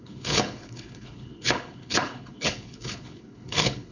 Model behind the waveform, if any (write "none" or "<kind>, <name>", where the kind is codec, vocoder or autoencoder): codec, HILCodec